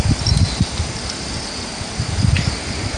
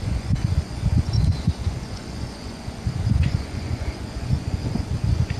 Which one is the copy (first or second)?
second